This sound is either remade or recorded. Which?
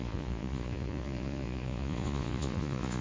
remade